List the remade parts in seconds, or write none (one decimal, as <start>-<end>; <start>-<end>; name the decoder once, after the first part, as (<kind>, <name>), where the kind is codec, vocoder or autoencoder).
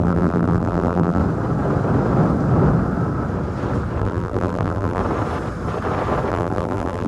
0.0-1.2 (vocoder, BigVGAN v2); 4.0-5.0; 6.3-7.1